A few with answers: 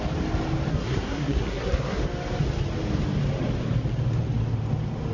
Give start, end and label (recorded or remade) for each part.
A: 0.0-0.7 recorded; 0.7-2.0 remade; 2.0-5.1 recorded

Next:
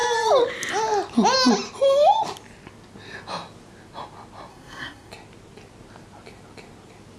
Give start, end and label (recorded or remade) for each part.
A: 0.0-4.5 recorded; 4.5-5.1 remade; 5.1-7.2 recorded

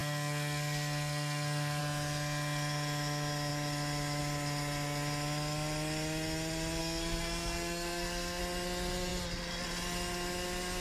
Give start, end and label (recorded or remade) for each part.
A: 0.0-1.8 remade; 1.8-6.8 recorded; 6.8-8.4 remade; 8.4-10.8 recorded

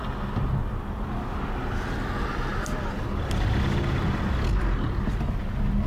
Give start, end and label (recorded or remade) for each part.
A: 0.0-5.9 recorded

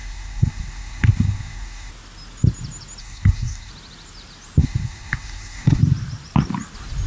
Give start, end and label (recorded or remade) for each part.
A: 0.0-1.9 remade; 1.9-3.0 recorded; 3.0-3.7 remade; 3.7-4.6 recorded; 4.6-5.8 remade; 5.8-7.1 recorded

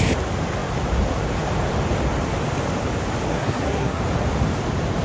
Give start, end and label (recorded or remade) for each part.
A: 0.0-3.3 recorded; 3.3-4.0 remade; 4.0-5.0 recorded